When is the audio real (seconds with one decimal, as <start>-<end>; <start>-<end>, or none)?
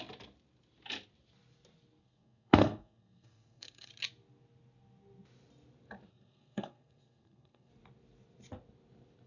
0.0-2.0; 3.9-6.1; 7.7-9.3